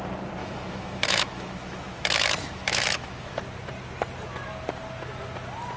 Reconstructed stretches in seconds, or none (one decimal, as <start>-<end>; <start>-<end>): 0.4-3.4